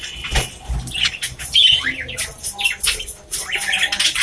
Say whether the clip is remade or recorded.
recorded